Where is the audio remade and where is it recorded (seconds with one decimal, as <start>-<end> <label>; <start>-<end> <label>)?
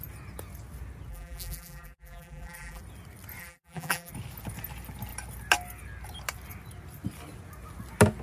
0.0-1.1 recorded; 1.1-2.8 remade; 2.8-3.4 recorded; 3.4-4.1 remade; 4.1-8.2 recorded